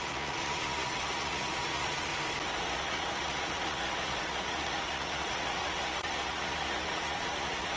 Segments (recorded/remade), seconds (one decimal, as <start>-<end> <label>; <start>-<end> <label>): 0.0-2.1 remade; 2.1-2.6 recorded; 2.6-7.8 remade